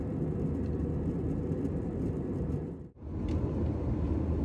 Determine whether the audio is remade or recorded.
recorded